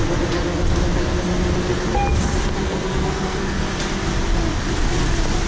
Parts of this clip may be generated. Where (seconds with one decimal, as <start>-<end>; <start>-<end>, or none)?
2.6-3.6